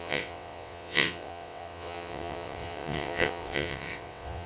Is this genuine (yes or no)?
no